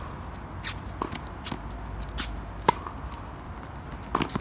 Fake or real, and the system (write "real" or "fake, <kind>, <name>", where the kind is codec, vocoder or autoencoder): real